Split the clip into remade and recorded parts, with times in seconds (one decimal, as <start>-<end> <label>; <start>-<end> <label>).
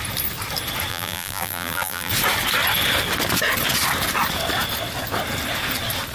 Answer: 0.0-0.9 recorded; 0.9-2.1 remade; 2.1-6.1 recorded